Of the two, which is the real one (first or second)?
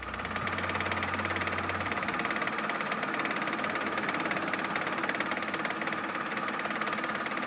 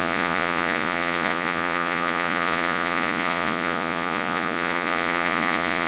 first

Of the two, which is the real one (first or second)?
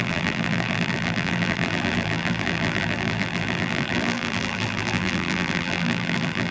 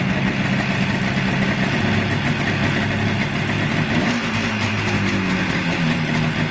second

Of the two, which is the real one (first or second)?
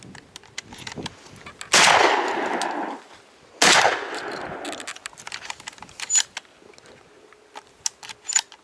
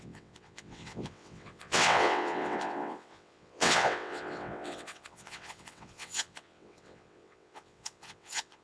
first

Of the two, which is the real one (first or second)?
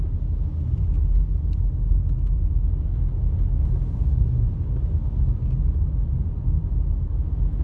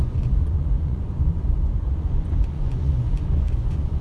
first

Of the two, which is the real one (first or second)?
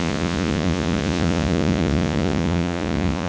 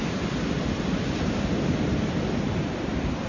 second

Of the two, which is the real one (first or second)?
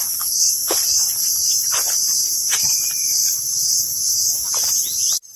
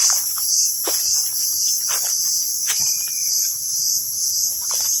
second